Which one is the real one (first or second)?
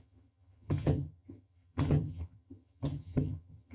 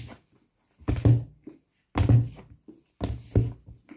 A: second